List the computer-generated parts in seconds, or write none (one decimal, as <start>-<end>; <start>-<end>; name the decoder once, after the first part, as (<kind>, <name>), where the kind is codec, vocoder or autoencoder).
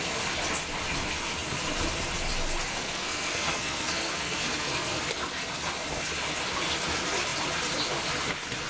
2.7-5.0 (codec, SNAC)